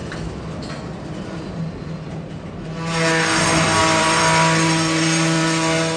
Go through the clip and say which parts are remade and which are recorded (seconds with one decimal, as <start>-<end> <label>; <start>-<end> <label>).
0.0-2.1 remade; 2.1-3.8 recorded; 3.8-6.0 remade